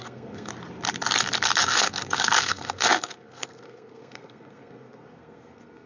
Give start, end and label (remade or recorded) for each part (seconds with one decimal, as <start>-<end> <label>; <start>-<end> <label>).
0.0-0.5 remade; 0.5-1.6 recorded; 1.6-5.9 remade